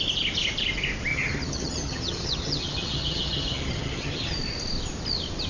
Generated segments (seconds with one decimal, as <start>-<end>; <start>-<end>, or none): 1.1-4.4